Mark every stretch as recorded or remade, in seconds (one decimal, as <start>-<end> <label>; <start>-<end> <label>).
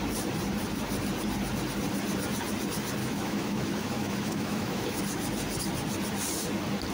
0.0-3.0 recorded; 3.0-5.0 remade; 5.0-6.9 recorded